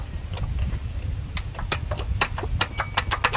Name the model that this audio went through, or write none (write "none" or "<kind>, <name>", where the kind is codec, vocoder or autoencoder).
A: none